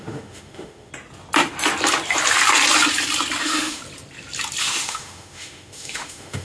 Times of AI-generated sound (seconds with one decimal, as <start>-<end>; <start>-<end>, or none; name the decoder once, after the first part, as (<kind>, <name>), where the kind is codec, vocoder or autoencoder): 0.0-0.9 (autoencoder, DAC-VAE); 3.4-3.8; 4.6-6.4